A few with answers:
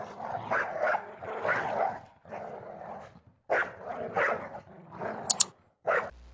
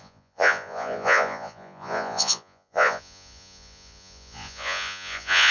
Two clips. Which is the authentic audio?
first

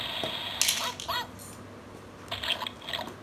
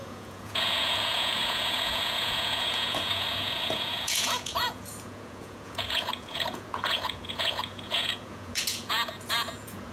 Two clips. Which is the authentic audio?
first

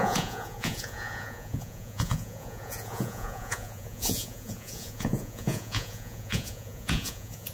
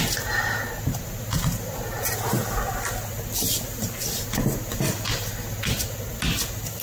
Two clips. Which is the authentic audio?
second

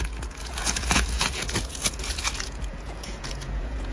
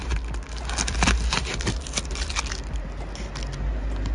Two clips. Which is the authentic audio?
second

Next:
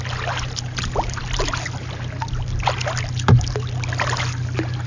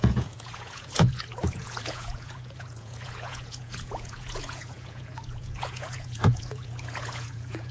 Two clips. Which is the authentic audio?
first